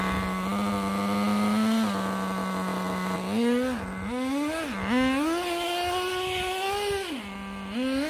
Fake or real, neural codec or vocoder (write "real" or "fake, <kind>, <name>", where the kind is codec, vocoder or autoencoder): real